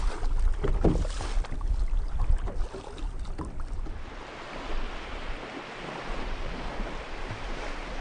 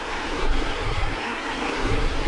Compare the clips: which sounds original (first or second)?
first